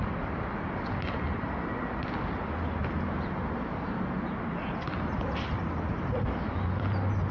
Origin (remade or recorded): recorded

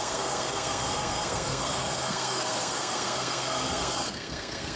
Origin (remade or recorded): remade